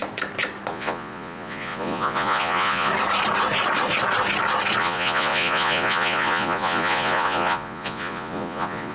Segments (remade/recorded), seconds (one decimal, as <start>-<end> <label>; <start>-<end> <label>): 0.0-0.7 recorded; 0.7-2.9 remade; 2.9-4.8 recorded; 4.8-8.9 remade